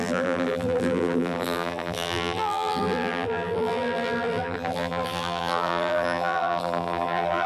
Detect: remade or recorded remade